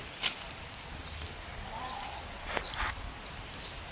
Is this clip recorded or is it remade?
recorded